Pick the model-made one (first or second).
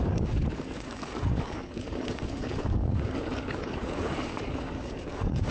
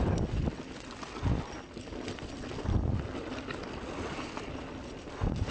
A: first